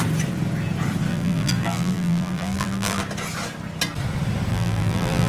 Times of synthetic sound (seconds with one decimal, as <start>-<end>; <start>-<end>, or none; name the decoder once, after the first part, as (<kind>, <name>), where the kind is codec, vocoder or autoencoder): 1.1-3.0 (vocoder, BigVGAN v2); 4.5-5.3